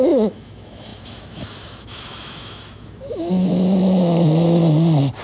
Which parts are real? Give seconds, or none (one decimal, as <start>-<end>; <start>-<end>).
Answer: 4.6-5.2